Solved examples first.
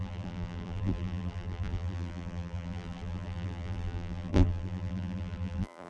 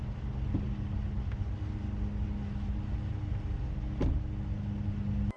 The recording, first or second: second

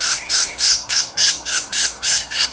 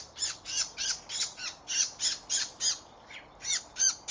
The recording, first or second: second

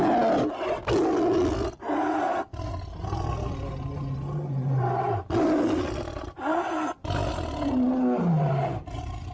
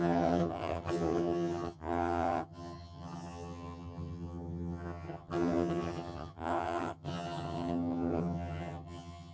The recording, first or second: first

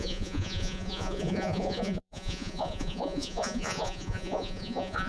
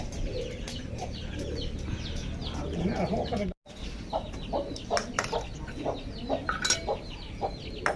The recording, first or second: second